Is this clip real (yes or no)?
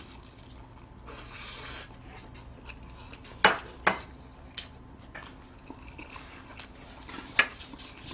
yes